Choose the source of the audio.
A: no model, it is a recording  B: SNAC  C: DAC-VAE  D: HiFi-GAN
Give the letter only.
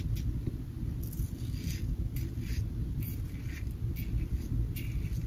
A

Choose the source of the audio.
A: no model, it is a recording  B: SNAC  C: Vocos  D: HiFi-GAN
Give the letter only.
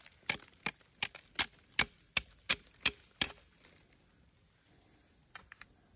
A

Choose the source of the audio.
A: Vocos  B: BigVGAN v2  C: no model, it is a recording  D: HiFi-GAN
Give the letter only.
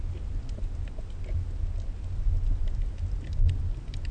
C